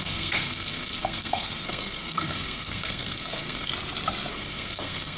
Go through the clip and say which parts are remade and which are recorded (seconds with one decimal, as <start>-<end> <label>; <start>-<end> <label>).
0.0-3.7 remade; 3.7-4.3 recorded; 4.3-5.2 remade